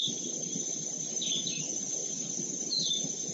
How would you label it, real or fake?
real